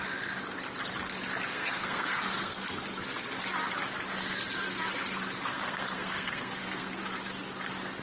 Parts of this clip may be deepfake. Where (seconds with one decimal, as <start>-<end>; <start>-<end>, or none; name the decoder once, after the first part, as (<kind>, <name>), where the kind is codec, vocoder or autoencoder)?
1.5-2.8 (codec, SNAC); 5.5-7.0